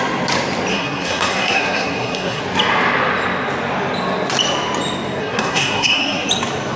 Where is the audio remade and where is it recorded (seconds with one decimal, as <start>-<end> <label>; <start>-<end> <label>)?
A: 0.0-0.7 recorded; 0.7-2.4 remade; 2.4-5.2 recorded; 5.2-6.3 remade; 6.3-6.8 recorded